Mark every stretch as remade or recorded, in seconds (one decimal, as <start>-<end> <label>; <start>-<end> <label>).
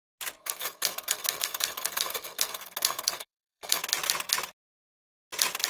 0.0-0.4 recorded; 0.4-3.8 remade; 3.8-5.7 recorded